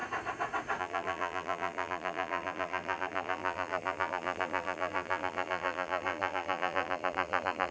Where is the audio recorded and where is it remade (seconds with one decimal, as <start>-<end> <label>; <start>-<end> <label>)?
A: 0.0-0.8 recorded; 0.8-7.7 remade